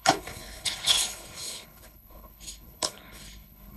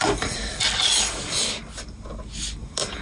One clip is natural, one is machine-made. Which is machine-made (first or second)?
first